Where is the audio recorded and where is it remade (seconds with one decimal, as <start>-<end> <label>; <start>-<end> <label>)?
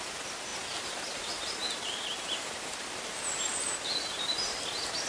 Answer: 0.0-5.1 recorded